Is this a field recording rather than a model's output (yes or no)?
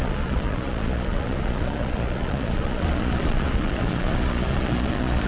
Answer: no